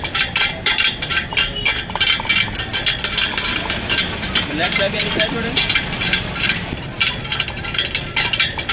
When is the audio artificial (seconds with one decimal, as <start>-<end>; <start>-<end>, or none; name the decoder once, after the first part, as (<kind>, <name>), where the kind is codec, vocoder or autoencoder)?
0.0-1.1 (vocoder, BigVGAN v2); 3.8-7.0; 7.6-8.7